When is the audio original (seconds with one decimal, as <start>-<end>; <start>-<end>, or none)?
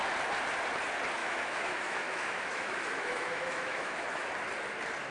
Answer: 0.0-1.2; 4.3-5.1